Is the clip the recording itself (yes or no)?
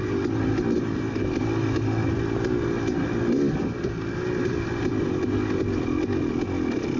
yes